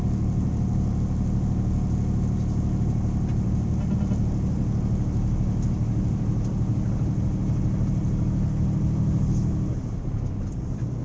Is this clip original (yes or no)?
yes